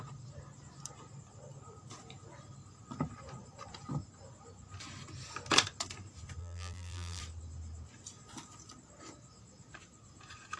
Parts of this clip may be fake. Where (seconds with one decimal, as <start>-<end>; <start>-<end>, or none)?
6.4-7.2